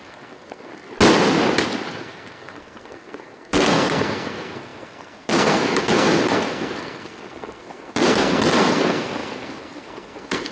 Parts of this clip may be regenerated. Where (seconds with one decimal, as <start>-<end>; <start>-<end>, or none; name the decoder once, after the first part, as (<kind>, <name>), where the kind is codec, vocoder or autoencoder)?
0.0-0.7 (codec, SNAC); 1.9-10.5